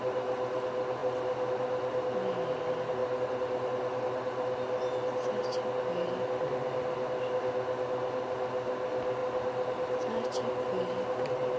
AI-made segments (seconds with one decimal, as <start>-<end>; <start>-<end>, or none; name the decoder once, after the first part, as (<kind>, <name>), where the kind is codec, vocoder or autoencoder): 3.0-5.4 (vocoder, BigVGAN v2); 9.2-11.6